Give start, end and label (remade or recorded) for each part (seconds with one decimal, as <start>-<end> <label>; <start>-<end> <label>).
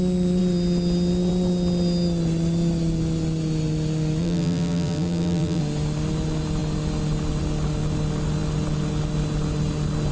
0.0-4.2 recorded; 4.2-5.6 remade; 5.6-10.1 recorded